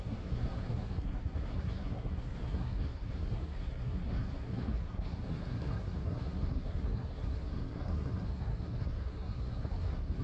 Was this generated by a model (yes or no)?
yes